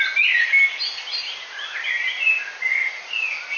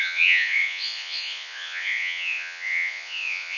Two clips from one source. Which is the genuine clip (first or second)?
first